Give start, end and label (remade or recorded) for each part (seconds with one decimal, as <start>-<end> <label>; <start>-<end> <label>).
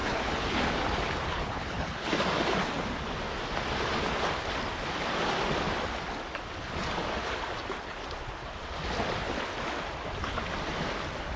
0.0-0.6 remade; 0.6-1.3 recorded; 1.3-2.1 remade; 2.1-11.4 recorded